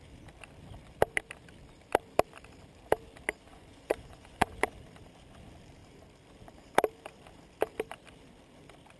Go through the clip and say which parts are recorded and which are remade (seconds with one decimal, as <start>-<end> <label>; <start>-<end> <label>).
0.0-3.5 recorded; 3.5-4.5 remade; 4.5-9.0 recorded